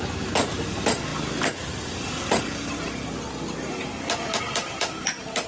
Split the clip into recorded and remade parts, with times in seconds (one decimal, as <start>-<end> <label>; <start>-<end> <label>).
0.0-5.5 recorded